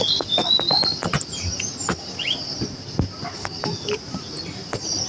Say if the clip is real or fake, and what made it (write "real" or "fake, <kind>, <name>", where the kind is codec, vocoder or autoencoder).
real